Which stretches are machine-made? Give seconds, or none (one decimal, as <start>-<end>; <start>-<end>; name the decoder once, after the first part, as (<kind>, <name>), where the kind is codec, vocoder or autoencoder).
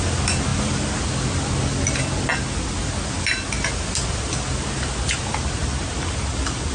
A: none